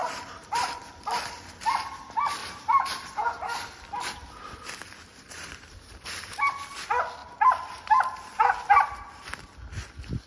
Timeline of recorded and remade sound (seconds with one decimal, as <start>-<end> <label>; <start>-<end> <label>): 0.0-0.8 remade; 0.8-2.4 recorded; 2.4-3.7 remade; 3.7-5.1 recorded; 5.1-6.3 remade; 6.3-10.3 recorded

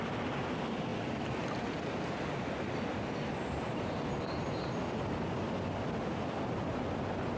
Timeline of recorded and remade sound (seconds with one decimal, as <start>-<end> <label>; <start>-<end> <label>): 0.0-7.4 recorded